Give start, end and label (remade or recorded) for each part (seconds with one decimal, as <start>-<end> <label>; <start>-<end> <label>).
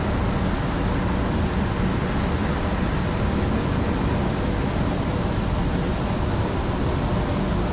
0.0-7.7 recorded